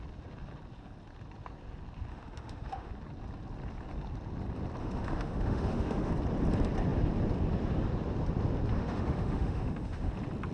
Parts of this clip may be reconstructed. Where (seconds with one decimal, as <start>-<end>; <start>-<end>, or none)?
2.1-2.9; 4.8-6.1; 8.7-10.1